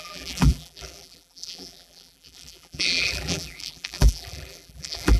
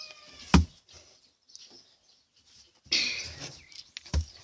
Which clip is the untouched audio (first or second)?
second